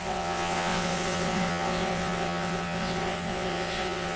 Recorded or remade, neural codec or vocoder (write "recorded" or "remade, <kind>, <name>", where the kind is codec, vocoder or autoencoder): remade, vocoder, WaveNeXt